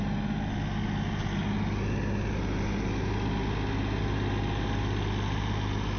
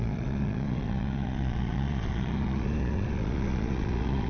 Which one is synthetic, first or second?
second